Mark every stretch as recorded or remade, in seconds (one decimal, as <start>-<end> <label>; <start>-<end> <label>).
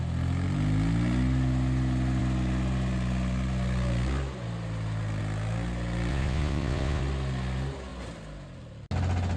0.0-6.1 recorded; 6.1-7.0 remade; 7.0-9.4 recorded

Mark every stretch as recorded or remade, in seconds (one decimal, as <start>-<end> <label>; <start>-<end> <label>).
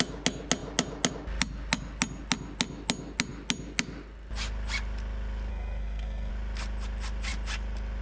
0.0-5.5 recorded; 5.5-6.3 remade; 6.3-8.0 recorded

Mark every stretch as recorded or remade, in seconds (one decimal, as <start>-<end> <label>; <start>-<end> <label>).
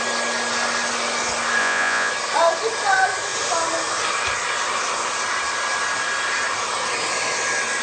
0.0-1.6 recorded; 1.6-2.1 remade; 2.1-7.8 recorded